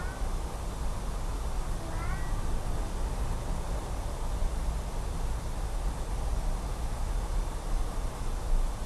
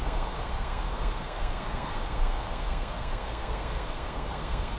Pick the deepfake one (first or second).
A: second